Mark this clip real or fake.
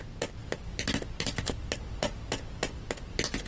real